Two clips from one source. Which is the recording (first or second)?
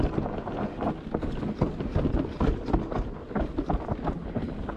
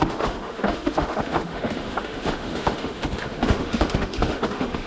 first